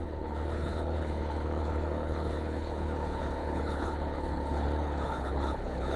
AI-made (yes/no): yes